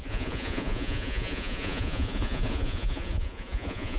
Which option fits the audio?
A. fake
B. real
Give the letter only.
A